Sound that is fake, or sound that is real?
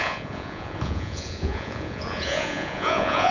fake